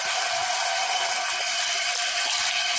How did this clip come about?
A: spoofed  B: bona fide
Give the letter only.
B